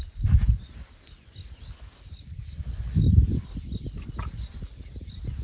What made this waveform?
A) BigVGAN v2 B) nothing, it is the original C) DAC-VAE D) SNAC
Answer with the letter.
B